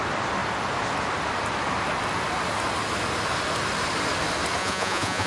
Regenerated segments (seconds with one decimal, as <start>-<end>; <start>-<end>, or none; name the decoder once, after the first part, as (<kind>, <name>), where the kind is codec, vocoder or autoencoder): 4.6-5.3 (vocoder, Vocos)